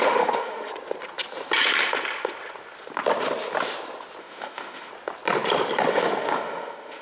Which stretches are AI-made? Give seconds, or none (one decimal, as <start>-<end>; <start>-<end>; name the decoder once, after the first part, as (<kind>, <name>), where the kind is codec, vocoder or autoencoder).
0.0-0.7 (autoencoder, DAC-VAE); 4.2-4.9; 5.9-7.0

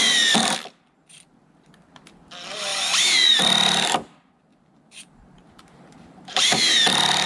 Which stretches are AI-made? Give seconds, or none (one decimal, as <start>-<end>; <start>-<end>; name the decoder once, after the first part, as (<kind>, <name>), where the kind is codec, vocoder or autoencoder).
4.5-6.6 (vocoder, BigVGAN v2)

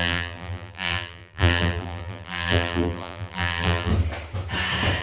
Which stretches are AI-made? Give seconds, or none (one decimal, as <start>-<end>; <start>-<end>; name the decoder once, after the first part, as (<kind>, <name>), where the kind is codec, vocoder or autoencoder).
0.0-3.9 (vocoder, BigVGAN v2)

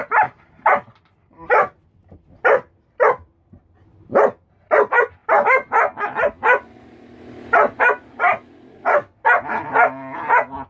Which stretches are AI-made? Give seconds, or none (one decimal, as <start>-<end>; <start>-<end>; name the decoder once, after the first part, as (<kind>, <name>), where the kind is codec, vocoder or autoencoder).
none

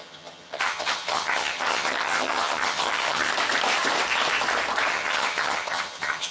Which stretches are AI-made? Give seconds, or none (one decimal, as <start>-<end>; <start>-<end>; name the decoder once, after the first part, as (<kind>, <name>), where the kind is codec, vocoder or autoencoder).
0.0-3.3 (vocoder, HiFi-GAN); 4.9-6.3

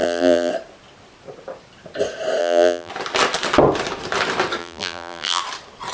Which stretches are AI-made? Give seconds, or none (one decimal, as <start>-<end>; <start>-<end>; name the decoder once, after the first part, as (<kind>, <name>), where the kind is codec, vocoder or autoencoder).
0.0-0.5 (vocoder, BigVGAN v2); 2.4-2.9; 4.6-5.4

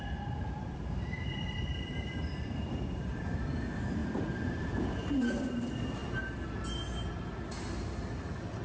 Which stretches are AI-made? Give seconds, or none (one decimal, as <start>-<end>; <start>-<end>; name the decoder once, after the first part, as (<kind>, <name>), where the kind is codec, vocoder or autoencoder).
0.0-3.2 (vocoder, BigVGAN v2); 4.0-5.4

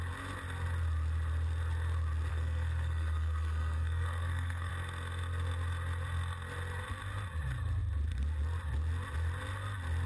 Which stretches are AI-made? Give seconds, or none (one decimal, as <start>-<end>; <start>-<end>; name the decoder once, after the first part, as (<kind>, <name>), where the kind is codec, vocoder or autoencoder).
2.3-4.7 (codec, SNAC)